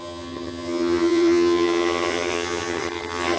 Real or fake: fake